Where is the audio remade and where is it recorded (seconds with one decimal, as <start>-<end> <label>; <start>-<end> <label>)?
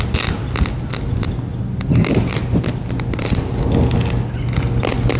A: 0.0-5.2 recorded